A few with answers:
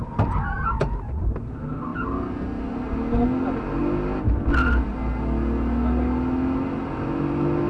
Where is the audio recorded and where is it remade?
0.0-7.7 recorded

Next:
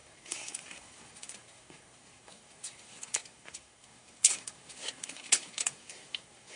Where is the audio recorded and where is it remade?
0.0-6.6 remade

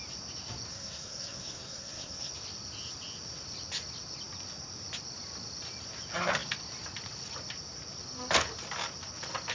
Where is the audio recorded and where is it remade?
0.0-0.7 recorded; 0.7-2.3 remade; 2.3-9.5 recorded

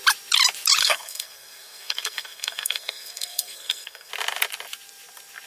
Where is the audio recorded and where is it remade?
0.0-0.8 recorded; 0.8-4.1 remade; 4.1-5.5 recorded